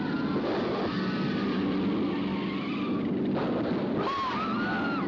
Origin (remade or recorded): recorded